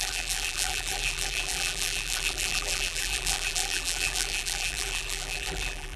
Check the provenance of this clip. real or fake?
fake